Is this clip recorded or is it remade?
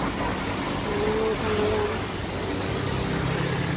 recorded